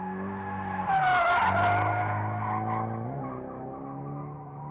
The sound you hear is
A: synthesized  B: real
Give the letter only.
B